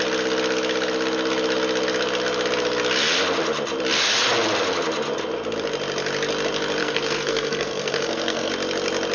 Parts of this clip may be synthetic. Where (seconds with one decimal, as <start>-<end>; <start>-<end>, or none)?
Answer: 6.8-8.5